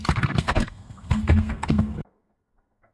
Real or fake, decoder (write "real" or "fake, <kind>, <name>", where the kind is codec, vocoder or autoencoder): fake, codec, SNAC